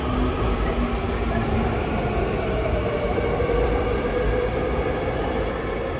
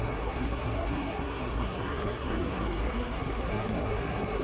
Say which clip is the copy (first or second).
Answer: second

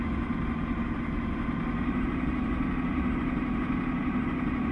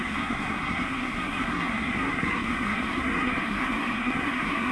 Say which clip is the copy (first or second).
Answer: second